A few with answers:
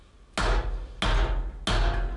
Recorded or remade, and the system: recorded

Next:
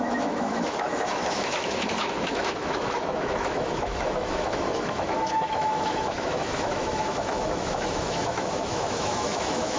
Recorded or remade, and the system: remade, autoencoder, DAC-VAE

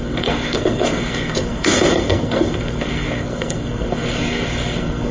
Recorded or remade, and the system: remade, codec, SNAC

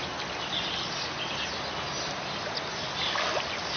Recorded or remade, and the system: recorded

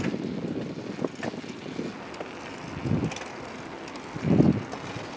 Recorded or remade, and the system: recorded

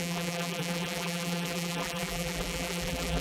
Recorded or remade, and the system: remade, vocoder, BigVGAN v2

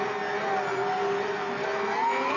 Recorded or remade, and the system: recorded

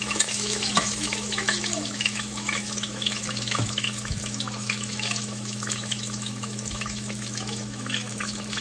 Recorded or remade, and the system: remade, autoencoder, DAC-VAE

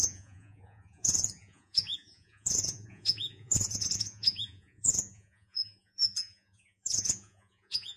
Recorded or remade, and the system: remade, vocoder, Vocos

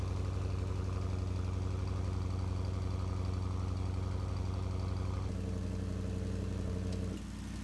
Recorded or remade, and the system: recorded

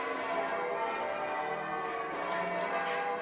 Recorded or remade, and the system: recorded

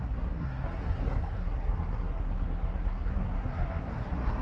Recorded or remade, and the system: remade, codec, SNAC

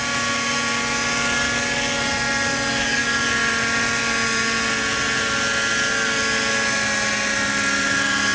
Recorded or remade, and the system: recorded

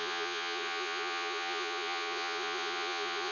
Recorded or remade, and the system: remade, vocoder, Vocos